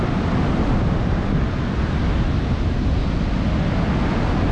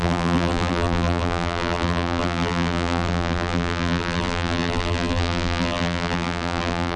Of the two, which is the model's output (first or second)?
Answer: second